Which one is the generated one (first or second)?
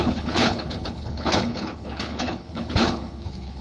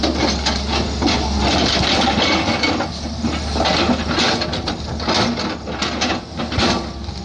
first